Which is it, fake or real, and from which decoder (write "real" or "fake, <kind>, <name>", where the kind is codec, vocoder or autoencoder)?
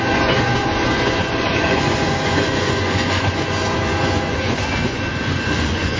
fake, vocoder, Vocos